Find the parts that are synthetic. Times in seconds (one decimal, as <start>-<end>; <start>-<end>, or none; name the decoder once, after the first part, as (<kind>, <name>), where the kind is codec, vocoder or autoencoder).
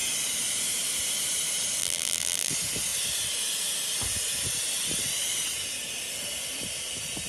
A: 1.8-2.5 (vocoder, BigVGAN v2)